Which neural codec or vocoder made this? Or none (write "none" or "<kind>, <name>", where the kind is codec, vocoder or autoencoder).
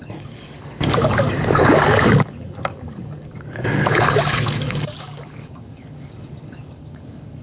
codec, DAC